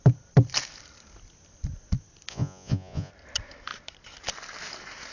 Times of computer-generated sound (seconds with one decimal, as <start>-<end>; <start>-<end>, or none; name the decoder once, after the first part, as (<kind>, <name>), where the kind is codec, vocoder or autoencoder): 2.3-3.1 (vocoder, Vocos)